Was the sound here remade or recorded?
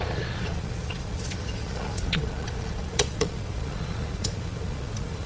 remade